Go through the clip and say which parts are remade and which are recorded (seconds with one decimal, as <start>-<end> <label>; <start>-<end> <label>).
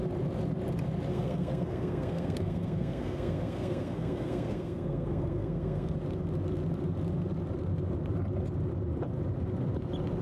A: 0.0-1.1 recorded; 1.1-5.9 remade; 5.9-10.2 recorded